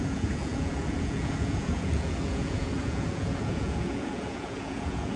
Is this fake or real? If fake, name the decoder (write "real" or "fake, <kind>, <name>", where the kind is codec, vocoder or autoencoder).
fake, vocoder, Vocos